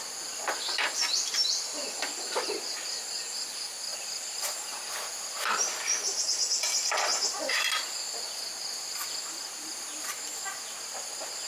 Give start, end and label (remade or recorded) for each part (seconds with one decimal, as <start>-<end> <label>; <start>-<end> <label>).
0.0-3.9 recorded; 3.9-4.9 remade; 4.9-7.1 recorded; 7.1-7.6 remade; 7.6-9.6 recorded; 9.6-10.3 remade; 10.3-11.5 recorded